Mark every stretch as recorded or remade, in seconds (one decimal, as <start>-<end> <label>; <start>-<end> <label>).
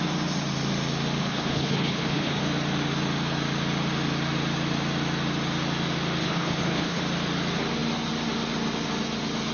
0.0-1.2 recorded; 1.2-2.4 remade; 2.4-6.2 recorded; 6.2-7.0 remade; 7.0-9.5 recorded